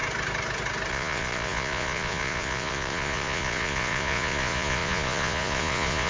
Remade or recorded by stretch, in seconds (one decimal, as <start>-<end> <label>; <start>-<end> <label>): 0.0-0.9 recorded; 0.9-6.1 remade